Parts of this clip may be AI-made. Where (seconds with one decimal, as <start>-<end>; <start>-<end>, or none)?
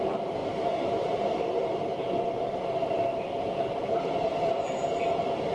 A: none